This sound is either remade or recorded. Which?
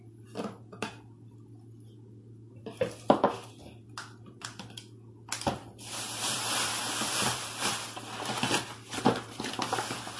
recorded